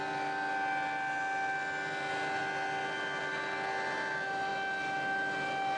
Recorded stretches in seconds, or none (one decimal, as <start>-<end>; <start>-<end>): 0.0-5.8